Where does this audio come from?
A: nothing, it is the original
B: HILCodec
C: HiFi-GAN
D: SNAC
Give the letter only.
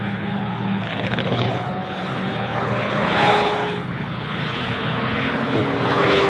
B